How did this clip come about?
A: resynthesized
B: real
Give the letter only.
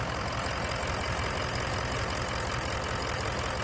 B